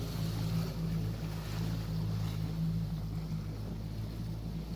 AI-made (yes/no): no